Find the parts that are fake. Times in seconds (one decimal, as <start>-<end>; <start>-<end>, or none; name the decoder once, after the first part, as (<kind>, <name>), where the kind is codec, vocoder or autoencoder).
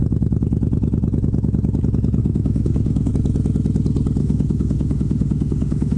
2.2-3.1 (autoencoder, DAC-VAE); 4.2-6.0